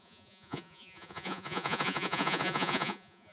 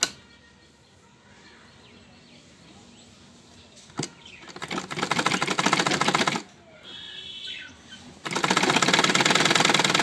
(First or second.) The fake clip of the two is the first